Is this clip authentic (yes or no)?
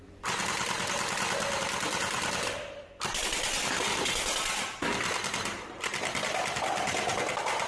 yes